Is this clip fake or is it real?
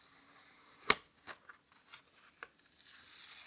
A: real